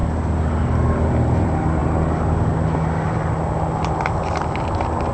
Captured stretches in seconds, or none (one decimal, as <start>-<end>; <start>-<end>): 0.0-5.1